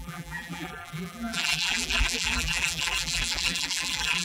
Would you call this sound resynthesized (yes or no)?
yes